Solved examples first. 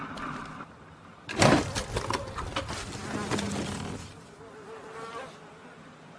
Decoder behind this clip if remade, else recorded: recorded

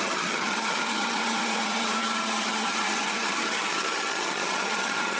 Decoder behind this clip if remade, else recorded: remade, vocoder, HiFi-GAN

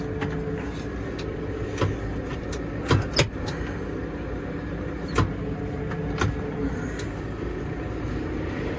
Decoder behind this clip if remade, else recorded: recorded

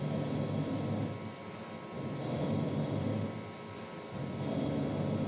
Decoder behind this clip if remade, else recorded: recorded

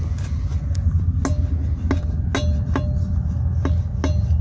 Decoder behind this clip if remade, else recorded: recorded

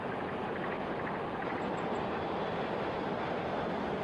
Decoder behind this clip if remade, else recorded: recorded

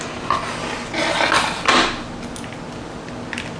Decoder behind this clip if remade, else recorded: recorded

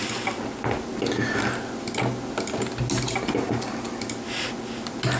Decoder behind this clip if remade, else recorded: recorded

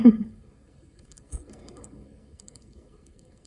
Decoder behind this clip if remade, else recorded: remade, codec, SNAC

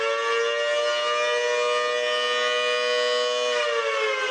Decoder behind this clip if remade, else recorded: recorded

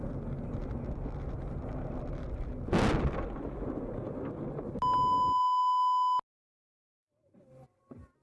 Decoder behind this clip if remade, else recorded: recorded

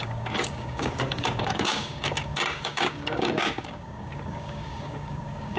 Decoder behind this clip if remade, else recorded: remade, codec, DAC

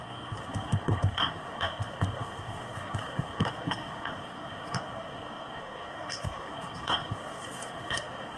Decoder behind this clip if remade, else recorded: remade, codec, SNAC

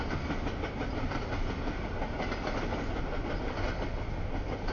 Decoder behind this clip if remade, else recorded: recorded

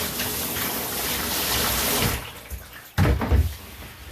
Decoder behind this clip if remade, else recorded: recorded